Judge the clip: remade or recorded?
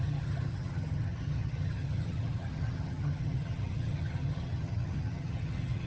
remade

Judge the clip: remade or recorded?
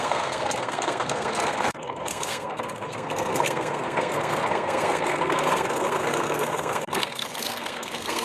remade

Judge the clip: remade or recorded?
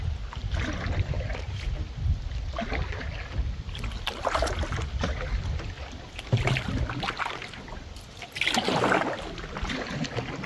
recorded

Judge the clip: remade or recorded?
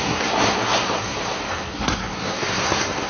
remade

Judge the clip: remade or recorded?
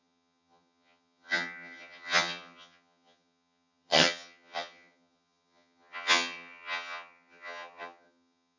remade